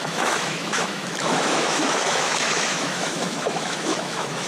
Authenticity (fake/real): fake